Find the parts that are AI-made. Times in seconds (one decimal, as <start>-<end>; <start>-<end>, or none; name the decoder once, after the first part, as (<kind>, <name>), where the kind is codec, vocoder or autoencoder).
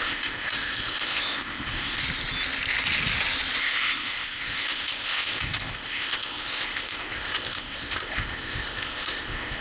0.0-2.0 (codec, ZipCodec); 3.6-9.6